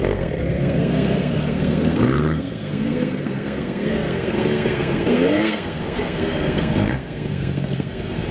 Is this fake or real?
fake